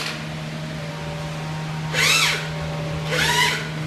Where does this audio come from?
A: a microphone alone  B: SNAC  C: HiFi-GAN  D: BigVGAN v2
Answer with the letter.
A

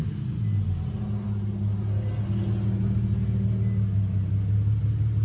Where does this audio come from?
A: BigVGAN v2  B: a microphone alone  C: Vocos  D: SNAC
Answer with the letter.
B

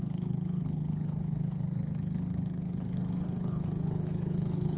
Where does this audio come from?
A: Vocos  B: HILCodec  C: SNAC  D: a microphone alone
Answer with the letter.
B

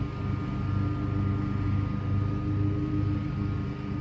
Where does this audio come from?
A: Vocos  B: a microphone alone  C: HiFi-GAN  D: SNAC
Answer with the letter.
B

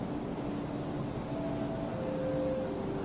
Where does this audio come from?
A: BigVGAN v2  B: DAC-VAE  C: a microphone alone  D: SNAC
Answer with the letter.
C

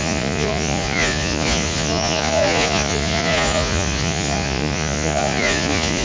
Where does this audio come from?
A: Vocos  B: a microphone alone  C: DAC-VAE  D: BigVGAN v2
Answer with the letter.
A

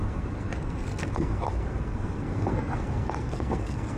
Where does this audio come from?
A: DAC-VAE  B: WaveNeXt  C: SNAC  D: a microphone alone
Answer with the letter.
C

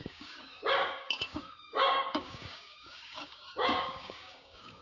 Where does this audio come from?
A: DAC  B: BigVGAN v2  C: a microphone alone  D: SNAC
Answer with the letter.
A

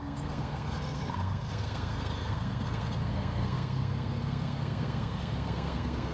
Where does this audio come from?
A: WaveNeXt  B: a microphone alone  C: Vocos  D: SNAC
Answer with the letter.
D